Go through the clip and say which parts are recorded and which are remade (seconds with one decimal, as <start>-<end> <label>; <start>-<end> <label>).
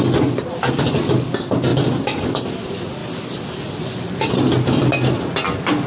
0.0-5.9 recorded